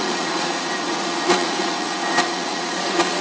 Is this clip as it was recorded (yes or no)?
no